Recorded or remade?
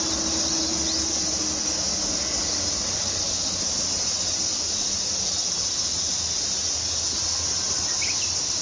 recorded